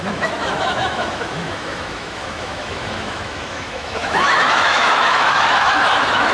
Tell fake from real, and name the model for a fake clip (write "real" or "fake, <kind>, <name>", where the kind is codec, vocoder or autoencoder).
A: fake, autoencoder, DAC-VAE